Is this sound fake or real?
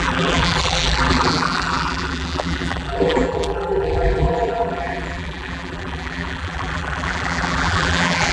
fake